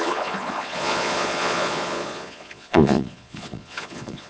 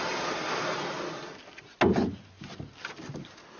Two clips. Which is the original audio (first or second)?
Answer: second